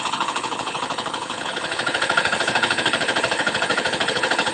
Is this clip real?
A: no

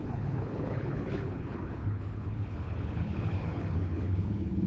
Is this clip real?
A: no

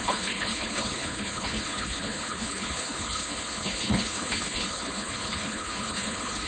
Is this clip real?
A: no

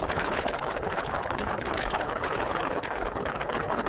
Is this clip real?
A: no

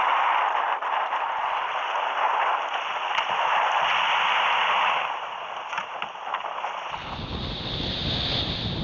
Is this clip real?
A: yes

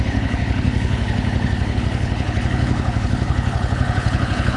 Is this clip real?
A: no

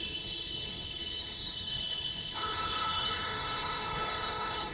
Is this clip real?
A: no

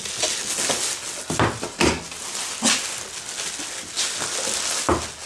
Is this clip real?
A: yes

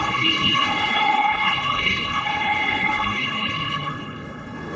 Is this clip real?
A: no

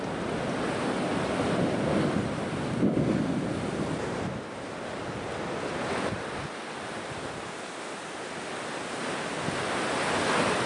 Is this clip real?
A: yes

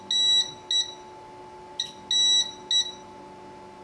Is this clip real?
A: yes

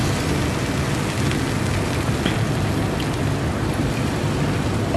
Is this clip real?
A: yes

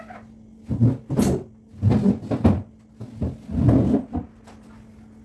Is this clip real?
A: yes